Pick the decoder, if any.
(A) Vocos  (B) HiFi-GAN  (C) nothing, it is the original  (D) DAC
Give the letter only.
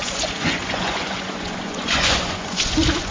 A